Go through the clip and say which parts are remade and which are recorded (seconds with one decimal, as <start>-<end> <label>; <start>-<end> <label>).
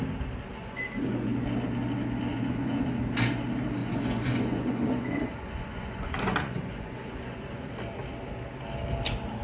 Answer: 0.0-0.6 recorded; 0.6-1.3 remade; 1.3-2.3 recorded; 2.3-2.9 remade; 2.9-3.8 recorded; 3.8-7.7 remade; 7.7-9.4 recorded